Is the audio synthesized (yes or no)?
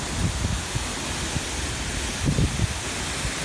no